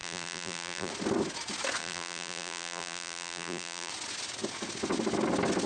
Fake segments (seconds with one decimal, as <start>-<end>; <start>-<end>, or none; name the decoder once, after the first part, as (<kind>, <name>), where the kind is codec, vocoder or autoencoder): 0.0-0.9 (vocoder, BigVGAN v2); 1.8-3.9